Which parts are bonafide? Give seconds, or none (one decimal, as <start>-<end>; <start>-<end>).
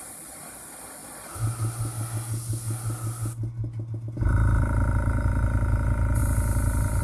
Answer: 0.0-6.2